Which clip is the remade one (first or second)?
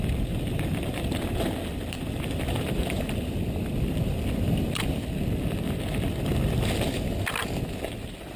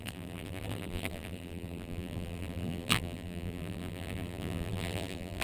second